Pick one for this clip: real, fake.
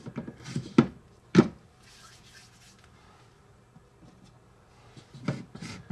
real